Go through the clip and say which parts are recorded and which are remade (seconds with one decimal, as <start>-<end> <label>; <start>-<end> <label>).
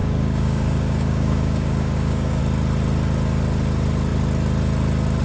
0.0-2.4 remade; 2.4-5.2 recorded